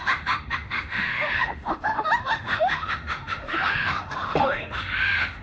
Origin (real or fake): fake